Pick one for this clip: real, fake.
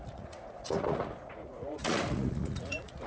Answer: fake